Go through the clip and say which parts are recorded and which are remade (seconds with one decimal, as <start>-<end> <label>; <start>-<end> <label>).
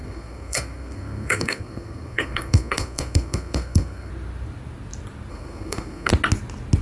0.0-4.1 remade; 4.1-5.3 recorded; 5.3-6.1 remade; 6.1-6.8 recorded